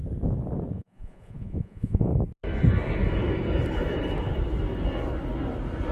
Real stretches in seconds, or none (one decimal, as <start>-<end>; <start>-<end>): 0.0-0.7; 2.1-5.9

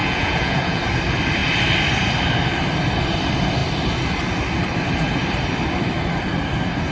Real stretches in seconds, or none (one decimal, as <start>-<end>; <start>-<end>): 0.8-6.9

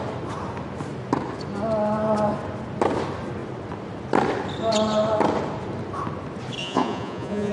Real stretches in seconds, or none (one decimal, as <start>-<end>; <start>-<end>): 0.0-6.6